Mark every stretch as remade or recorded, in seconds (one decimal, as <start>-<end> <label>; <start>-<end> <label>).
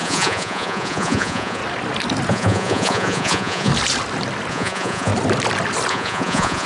0.0-1.6 remade; 1.6-2.3 recorded; 2.3-3.7 remade; 3.7-4.5 recorded; 4.5-5.1 remade; 5.1-5.9 recorded; 5.9-6.7 remade